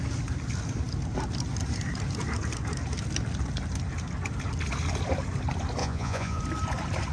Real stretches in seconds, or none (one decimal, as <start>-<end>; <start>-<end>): 0.0-5.8; 6.4-7.1

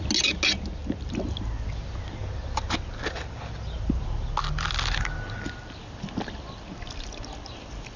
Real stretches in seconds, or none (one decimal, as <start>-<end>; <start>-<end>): 0.0-8.0

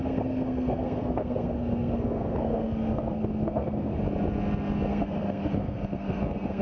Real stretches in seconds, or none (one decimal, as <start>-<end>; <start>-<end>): 4.0-4.9

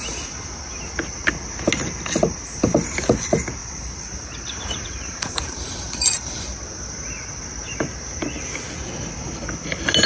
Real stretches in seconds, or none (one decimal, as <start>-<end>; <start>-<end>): 0.0-3.6; 6.9-10.1

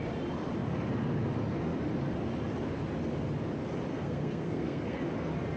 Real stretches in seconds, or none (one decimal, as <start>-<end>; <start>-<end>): 0.0-3.9; 5.0-5.6